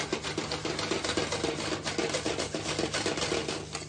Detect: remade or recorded recorded